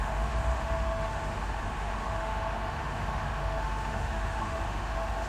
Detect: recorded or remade remade